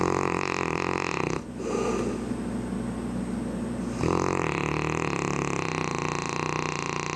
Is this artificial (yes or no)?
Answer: no